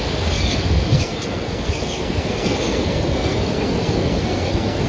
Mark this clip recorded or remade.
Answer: remade